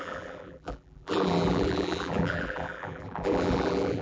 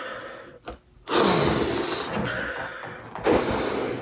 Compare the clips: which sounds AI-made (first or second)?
first